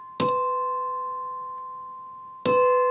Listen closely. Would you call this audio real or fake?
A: real